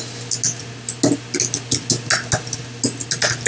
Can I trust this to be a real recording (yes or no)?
yes